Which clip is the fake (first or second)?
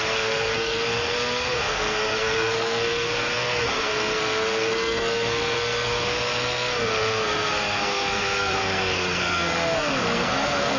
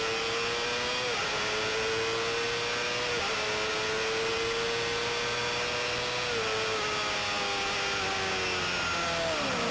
first